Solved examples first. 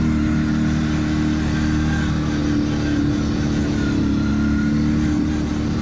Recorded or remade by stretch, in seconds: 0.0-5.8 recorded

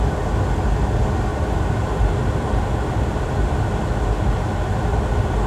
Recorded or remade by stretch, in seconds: 0.0-1.3 recorded; 1.3-3.8 remade; 3.8-5.5 recorded

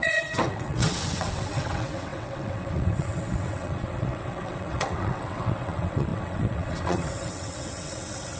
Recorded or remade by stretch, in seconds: 0.0-8.4 remade

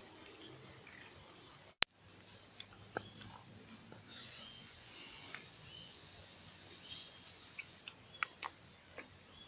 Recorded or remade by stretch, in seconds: 0.0-4.1 recorded; 4.1-7.8 remade; 7.8-9.5 recorded

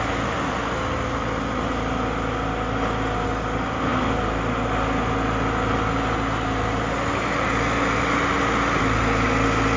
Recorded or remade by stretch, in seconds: 0.0-9.8 recorded

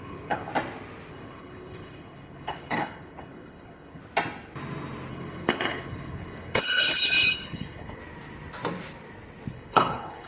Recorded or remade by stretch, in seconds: 0.0-0.5 remade; 0.5-1.1 recorded; 1.1-4.0 remade; 4.0-5.1 recorded; 5.1-8.0 remade; 8.0-9.5 recorded; 9.5-10.3 remade